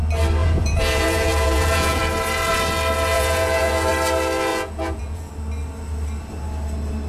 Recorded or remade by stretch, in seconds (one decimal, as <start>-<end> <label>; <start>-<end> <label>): 0.0-0.4 recorded; 0.4-2.0 remade; 2.0-3.1 recorded; 3.1-3.9 remade; 3.9-4.5 recorded; 4.5-5.3 remade; 5.3-7.1 recorded